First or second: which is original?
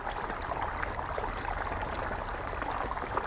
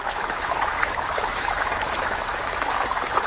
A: first